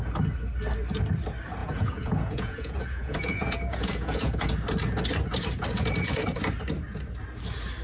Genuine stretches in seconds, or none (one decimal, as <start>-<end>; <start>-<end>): 0.0-1.6; 4.5-7.8